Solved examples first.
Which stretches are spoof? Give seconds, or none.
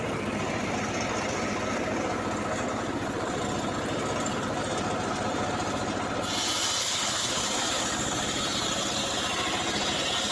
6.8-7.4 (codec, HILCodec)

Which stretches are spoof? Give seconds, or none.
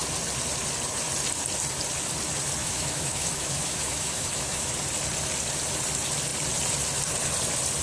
2.6-4.7 (autoencoder, DAC-VAE)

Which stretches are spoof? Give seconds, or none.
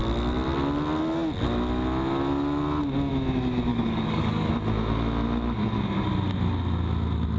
3.7-4.5 (codec, DAC)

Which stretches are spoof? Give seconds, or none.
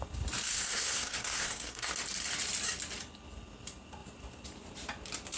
0.5-1.9 (codec, SNAC)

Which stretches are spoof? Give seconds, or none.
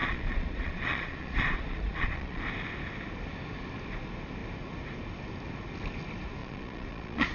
0.0-2.4 (vocoder, Vocos); 6.4-7.3